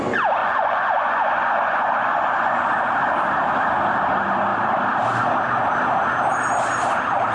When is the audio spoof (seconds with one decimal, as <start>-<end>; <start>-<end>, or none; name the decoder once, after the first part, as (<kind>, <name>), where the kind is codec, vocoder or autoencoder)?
0.4-2.7 (vocoder, Vocos)